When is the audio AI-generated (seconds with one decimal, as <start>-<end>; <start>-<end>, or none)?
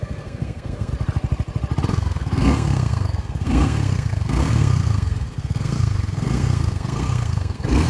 0.0-0.9; 1.9-7.9